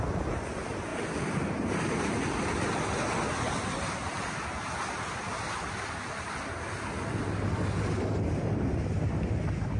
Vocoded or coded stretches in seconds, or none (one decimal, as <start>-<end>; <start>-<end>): none